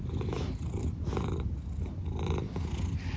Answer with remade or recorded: recorded